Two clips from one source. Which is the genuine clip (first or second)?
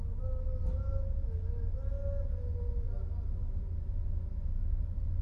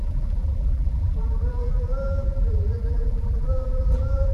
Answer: first